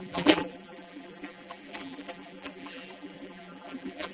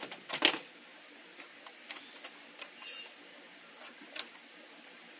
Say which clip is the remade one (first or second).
first